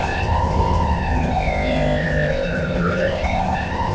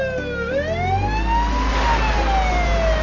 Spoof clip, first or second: first